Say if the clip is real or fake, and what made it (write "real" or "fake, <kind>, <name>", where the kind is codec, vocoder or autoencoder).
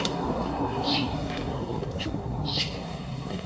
fake, codec, SNAC